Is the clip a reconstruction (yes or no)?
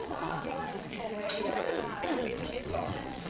yes